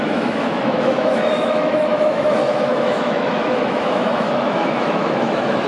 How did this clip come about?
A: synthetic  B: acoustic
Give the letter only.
A